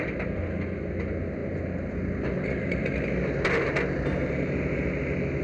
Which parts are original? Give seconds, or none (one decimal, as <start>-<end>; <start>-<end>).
0.0-5.4